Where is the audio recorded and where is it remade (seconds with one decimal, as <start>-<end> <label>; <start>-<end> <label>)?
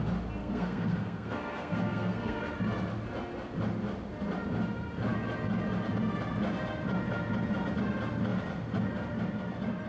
0.0-0.4 recorded; 0.4-2.4 remade; 2.4-9.9 recorded